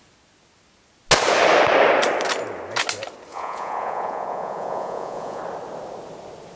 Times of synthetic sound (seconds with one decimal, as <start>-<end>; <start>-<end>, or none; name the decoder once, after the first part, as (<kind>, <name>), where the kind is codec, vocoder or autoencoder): 3.3-5.4 (vocoder, Vocos)